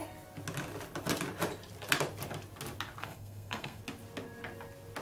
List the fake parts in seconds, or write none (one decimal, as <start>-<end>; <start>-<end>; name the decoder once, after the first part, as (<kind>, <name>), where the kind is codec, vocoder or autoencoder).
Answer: 3.0-3.8 (codec, SNAC)